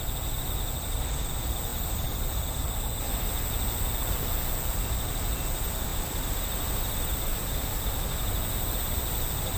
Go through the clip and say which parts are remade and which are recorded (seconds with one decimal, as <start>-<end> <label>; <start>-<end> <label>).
0.0-5.9 recorded; 5.9-7.4 remade; 7.4-9.6 recorded